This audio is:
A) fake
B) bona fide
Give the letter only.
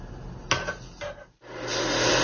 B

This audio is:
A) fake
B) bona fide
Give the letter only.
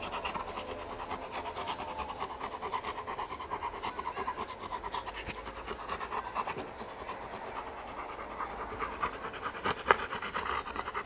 B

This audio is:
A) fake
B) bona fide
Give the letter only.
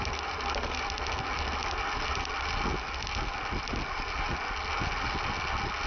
B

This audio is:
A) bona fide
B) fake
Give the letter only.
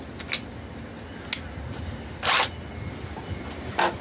A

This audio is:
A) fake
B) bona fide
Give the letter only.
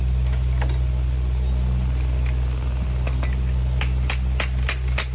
B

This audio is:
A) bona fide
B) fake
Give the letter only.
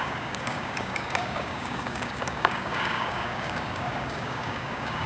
B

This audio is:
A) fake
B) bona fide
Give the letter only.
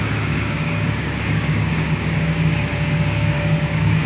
A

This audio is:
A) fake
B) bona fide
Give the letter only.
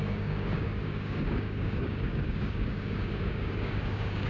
A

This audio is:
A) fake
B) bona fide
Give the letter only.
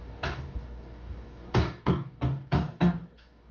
A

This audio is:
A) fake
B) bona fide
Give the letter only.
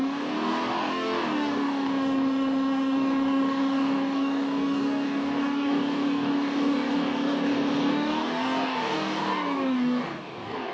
A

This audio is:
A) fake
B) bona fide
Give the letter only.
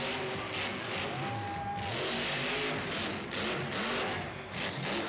B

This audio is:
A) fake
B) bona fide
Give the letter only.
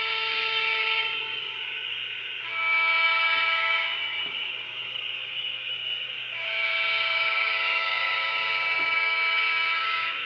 A